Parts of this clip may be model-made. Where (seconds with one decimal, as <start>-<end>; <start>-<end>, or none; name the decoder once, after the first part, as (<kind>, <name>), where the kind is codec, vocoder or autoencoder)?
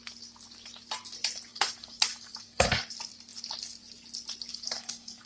1.5-2.9 (codec, DAC); 4.5-5.3